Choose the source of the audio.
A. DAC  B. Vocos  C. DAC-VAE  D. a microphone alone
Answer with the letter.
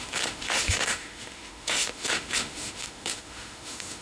C